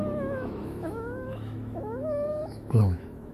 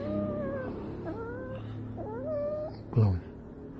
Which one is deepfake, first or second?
first